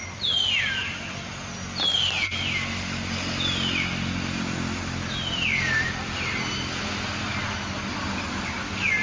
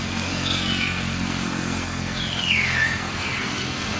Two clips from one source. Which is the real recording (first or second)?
first